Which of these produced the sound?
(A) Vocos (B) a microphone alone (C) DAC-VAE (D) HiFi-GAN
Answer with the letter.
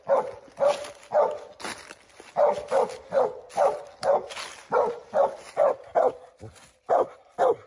B